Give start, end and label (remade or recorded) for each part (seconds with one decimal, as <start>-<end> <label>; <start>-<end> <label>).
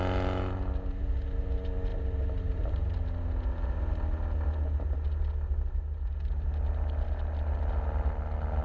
0.0-8.6 recorded